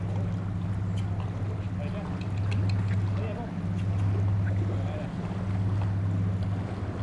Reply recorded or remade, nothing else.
recorded